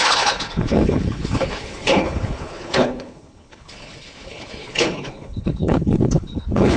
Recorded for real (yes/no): no